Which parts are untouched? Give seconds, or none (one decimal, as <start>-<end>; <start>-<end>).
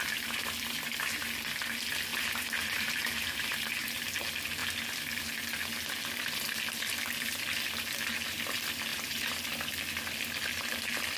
0.0-2.1; 3.7-8.9; 9.4-11.2